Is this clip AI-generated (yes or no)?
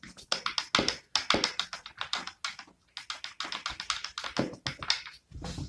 no